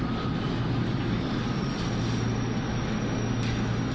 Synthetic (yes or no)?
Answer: no